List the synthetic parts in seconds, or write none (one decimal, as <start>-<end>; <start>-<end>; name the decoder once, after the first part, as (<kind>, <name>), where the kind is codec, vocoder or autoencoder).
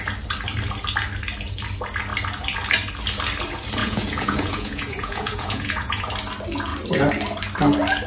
3.8-6.1 (vocoder, Vocos)